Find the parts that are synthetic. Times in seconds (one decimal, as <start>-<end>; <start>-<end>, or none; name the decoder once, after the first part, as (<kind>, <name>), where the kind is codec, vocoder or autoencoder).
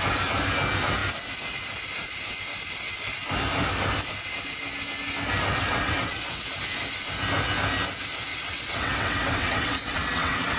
5.6-6.4 (vocoder, WaveNeXt); 8.3-10.6